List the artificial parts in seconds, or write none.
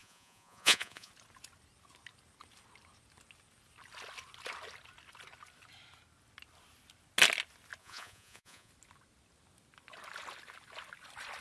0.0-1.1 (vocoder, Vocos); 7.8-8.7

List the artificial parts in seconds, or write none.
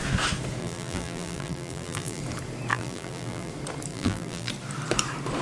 0.6-2.2 (vocoder, BigVGAN v2); 2.7-3.5; 3.9-4.5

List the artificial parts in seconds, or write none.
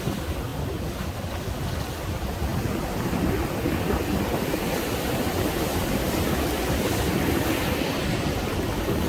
none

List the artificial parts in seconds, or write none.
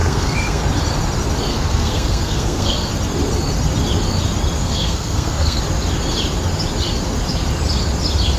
0.0-0.6 (codec, SNAC); 1.5-2.9; 4.6-5.6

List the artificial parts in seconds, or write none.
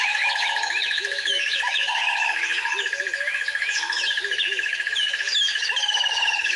0.0-6.6 (autoencoder, DAC-VAE)